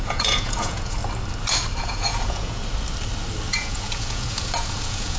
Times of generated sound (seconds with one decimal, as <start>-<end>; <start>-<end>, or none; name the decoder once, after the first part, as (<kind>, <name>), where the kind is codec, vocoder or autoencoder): 0.0-1.0 (vocoder, Vocos); 1.8-2.6; 3.5-5.2